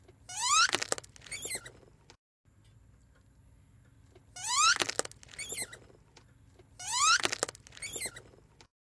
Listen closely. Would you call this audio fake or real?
real